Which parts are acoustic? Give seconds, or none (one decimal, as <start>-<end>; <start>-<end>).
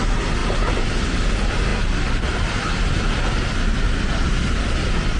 0.0-5.2